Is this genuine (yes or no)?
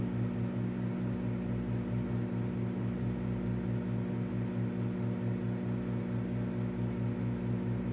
yes